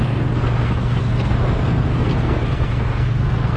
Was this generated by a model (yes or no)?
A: yes